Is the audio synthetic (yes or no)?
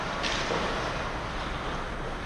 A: no